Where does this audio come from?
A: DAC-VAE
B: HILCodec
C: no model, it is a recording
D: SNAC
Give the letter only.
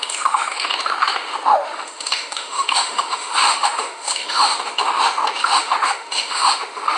A